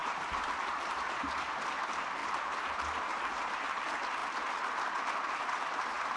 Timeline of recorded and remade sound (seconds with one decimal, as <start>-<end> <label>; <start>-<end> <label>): 0.0-1.8 remade; 1.8-2.2 recorded; 2.2-3.8 remade; 3.8-6.2 recorded